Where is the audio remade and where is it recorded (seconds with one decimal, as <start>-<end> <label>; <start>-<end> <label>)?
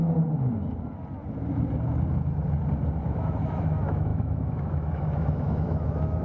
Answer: 0.0-3.1 recorded; 3.1-6.2 remade